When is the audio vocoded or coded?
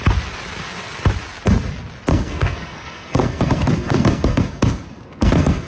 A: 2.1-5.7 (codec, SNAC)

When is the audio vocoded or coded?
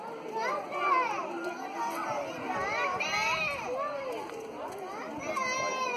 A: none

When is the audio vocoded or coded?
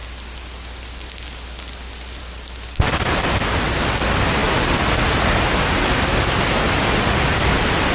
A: none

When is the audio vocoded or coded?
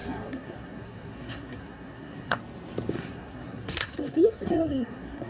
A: 0.0-2.4 (codec, SNAC); 2.9-5.3